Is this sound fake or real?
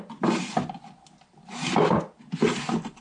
real